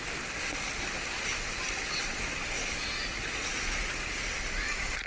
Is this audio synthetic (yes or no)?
no